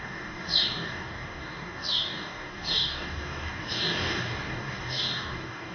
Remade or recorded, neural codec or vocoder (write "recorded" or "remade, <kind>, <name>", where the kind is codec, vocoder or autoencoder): remade, codec, DAC